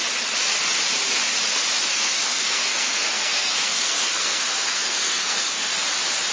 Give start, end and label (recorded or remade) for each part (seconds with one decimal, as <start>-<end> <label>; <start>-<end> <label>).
0.0-1.9 recorded; 1.9-5.7 remade; 5.7-6.3 recorded